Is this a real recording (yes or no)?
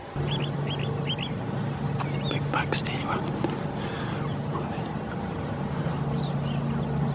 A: yes